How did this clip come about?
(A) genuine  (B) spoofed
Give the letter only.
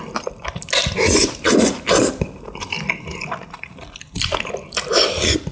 A